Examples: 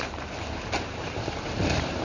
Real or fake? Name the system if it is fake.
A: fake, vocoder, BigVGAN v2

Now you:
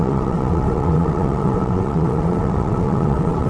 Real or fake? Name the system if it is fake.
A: fake, vocoder, WaveNeXt